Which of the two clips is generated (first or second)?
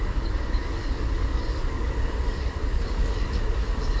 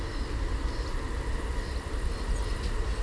first